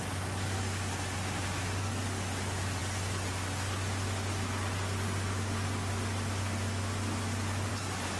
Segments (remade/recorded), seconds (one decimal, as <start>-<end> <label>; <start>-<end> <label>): 0.0-8.2 recorded